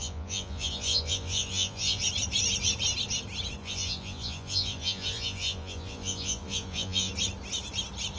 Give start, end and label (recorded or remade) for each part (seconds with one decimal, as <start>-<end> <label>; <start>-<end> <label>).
0.0-2.0 remade; 2.0-3.6 recorded; 3.6-7.1 remade; 7.1-8.2 recorded